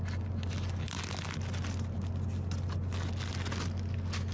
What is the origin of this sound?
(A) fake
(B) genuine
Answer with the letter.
B